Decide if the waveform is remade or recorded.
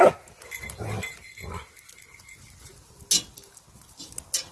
recorded